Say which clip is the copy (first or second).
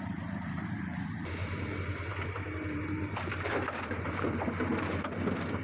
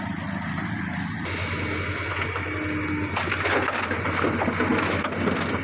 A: first